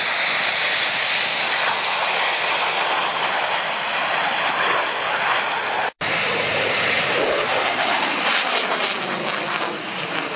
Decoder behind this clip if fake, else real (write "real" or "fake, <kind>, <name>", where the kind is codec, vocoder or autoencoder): real